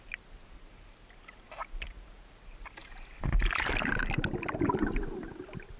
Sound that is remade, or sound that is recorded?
recorded